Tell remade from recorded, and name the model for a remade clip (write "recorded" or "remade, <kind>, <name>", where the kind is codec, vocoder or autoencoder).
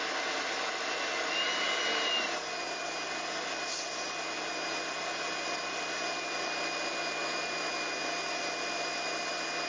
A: recorded